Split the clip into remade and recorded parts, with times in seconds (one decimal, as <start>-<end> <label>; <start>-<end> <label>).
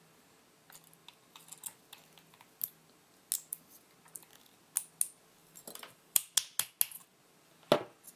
0.0-5.4 recorded; 5.4-6.3 remade; 6.3-8.2 recorded